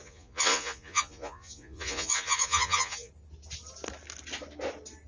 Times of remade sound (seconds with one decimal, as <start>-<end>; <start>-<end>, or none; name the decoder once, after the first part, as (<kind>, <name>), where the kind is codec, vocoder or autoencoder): 0.0-3.1 (vocoder, Vocos)